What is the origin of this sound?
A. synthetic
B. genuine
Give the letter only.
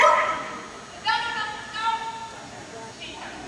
B